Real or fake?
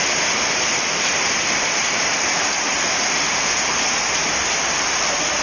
fake